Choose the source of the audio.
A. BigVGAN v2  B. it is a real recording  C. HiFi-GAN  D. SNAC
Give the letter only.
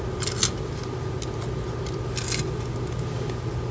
B